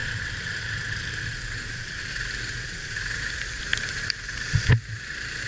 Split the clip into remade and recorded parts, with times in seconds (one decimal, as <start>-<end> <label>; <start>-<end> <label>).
0.0-3.7 remade; 3.7-4.7 recorded; 4.7-5.5 remade